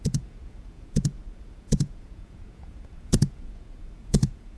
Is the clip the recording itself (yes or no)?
no